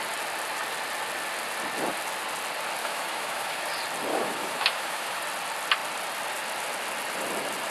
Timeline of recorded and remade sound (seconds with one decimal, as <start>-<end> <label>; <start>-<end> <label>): 0.0-2.8 recorded; 2.8-3.6 remade; 3.6-4.1 recorded; 4.1-5.2 remade; 5.2-7.7 recorded